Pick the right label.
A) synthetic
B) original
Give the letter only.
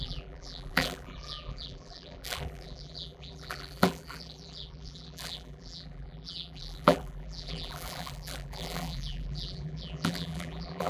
A